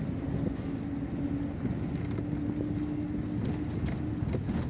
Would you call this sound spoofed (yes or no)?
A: no